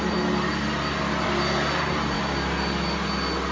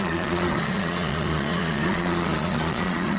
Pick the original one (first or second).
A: first